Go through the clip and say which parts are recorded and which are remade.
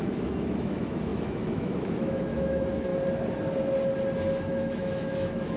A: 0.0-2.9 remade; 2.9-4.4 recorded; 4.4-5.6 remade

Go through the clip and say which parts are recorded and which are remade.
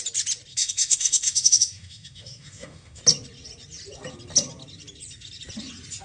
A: 0.0-0.5 recorded; 0.5-3.0 remade; 3.0-6.0 recorded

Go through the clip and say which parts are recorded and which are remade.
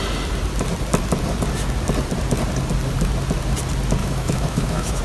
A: 0.0-4.0 recorded; 4.0-5.0 remade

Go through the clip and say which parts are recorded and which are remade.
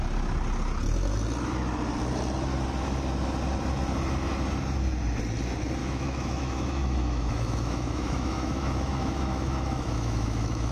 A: 0.0-5.8 recorded; 5.8-10.7 remade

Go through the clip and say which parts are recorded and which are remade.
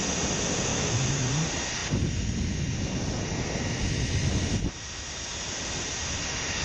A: 0.0-0.7 recorded; 0.7-1.3 remade; 1.3-6.6 recorded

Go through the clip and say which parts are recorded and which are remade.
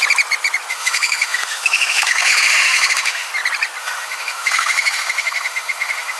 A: 0.0-0.7 recorded; 0.7-3.3 remade; 3.3-3.8 recorded; 3.8-6.2 remade